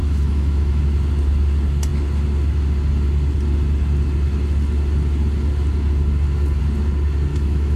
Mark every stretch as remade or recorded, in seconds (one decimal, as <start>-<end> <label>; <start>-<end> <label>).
0.0-0.8 remade; 0.8-7.3 recorded; 7.3-7.8 remade